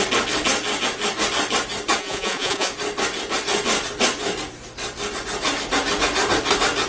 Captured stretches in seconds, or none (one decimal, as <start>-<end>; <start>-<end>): 0.0-2.0; 2.7-6.9